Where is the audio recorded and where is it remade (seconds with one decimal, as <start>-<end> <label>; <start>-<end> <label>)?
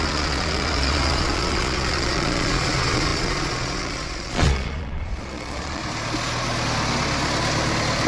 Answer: 0.0-5.8 remade; 5.8-8.1 recorded